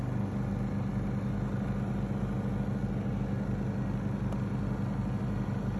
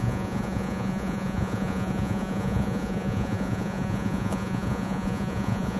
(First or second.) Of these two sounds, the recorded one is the first